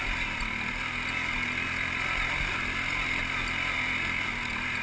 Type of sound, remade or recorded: recorded